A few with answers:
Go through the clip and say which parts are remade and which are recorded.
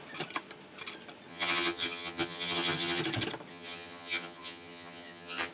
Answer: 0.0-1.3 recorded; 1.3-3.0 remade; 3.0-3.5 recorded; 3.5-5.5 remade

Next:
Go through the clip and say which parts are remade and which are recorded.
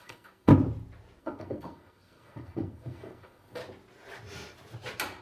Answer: 0.0-0.5 remade; 0.5-1.2 recorded; 1.2-3.6 remade; 3.6-5.2 recorded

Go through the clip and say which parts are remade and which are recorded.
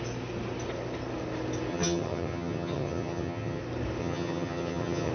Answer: 0.0-1.7 recorded; 1.7-3.6 remade; 3.6-4.0 recorded; 4.0-5.1 remade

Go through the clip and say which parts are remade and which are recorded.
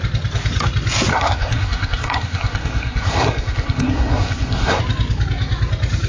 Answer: 0.0-1.1 recorded; 1.1-4.8 remade; 4.8-6.1 recorded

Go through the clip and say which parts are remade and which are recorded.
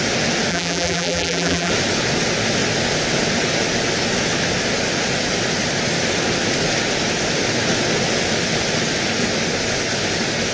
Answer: 0.0-0.5 recorded; 0.5-1.7 remade; 1.7-10.5 recorded